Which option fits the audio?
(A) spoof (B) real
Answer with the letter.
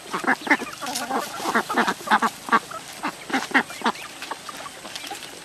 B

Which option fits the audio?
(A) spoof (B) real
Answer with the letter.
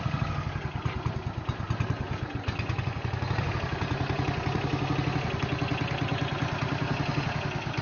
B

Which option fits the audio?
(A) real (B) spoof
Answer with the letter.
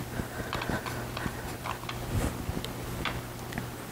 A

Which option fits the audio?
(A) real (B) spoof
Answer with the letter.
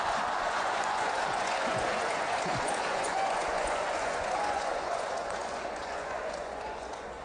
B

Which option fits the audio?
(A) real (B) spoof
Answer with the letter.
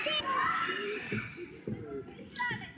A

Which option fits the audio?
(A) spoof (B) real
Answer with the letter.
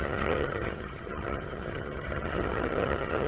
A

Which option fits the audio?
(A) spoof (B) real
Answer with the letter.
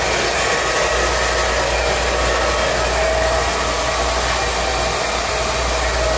B